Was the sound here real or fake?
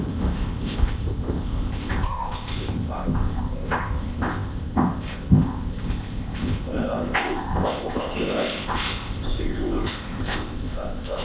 fake